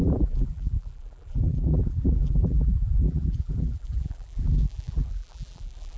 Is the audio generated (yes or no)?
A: yes